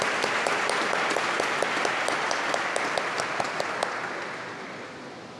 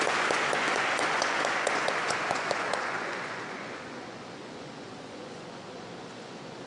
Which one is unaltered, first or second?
first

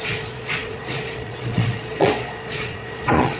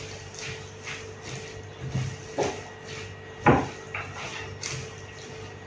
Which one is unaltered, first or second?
second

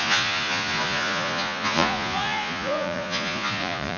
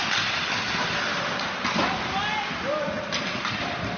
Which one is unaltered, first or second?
second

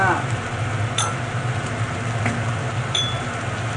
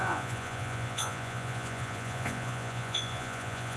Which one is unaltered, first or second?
first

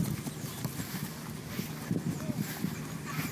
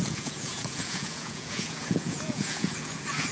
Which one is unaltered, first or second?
first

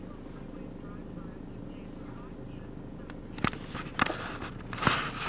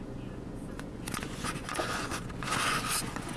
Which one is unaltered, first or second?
first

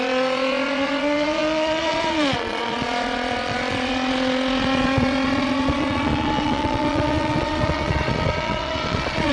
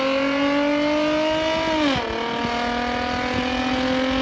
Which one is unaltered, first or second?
second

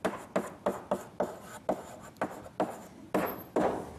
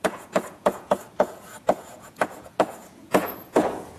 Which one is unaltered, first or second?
first